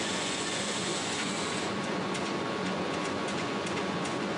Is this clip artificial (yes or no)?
yes